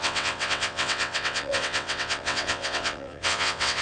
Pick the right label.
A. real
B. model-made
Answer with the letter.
B